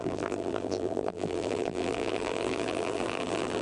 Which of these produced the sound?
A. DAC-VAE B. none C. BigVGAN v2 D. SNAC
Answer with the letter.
C